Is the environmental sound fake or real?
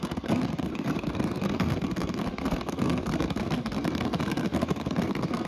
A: fake